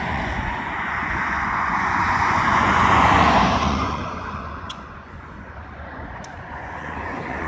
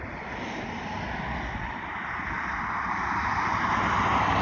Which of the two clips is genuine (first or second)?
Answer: second